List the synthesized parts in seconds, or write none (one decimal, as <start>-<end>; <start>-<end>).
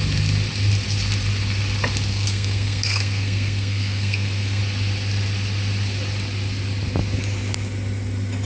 2.1-4.6